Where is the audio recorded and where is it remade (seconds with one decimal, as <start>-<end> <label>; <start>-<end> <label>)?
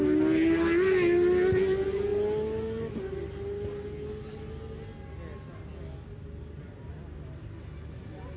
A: 0.0-8.4 recorded